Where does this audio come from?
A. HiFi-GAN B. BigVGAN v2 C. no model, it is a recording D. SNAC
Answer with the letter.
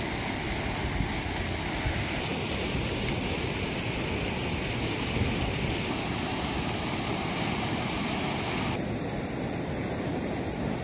C